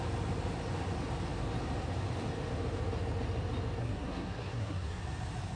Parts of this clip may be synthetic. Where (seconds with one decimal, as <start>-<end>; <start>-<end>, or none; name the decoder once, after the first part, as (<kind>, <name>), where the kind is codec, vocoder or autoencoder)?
3.8-5.0 (codec, SNAC)